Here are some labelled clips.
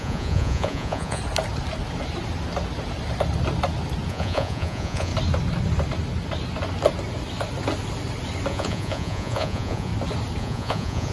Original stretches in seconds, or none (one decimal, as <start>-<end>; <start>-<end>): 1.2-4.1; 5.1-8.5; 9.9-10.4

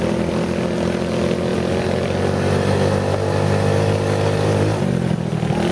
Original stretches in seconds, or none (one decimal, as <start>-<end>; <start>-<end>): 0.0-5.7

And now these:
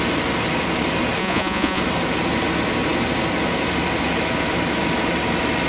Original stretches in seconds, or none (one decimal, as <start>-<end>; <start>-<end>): 0.0-1.2; 1.8-5.7

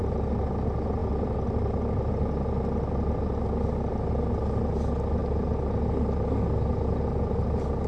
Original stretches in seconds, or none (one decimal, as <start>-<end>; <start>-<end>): 0.0-7.9

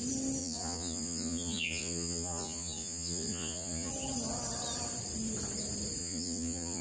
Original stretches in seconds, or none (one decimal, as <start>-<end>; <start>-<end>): 0.0-0.4; 3.9-6.0

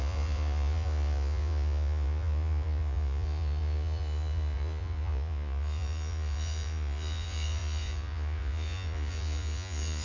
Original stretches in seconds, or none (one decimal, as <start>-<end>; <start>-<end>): none